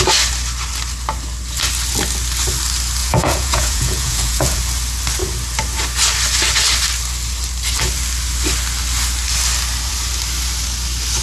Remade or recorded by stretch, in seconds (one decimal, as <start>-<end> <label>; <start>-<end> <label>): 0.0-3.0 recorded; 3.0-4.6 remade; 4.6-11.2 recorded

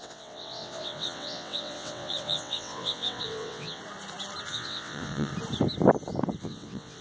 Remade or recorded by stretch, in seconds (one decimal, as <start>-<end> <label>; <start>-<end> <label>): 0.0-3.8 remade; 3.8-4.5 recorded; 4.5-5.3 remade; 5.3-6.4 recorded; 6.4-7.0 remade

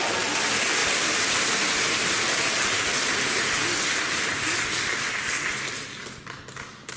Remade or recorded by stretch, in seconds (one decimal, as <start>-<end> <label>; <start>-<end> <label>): 0.0-7.0 recorded

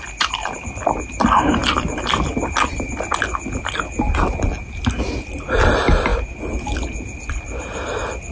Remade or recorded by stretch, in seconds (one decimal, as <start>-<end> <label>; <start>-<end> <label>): 0.0-8.3 recorded